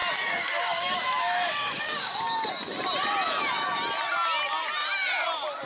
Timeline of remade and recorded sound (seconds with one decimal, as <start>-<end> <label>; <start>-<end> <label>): 0.0-2.5 remade; 2.5-5.6 recorded